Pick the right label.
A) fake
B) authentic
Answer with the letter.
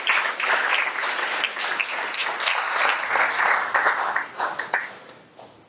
B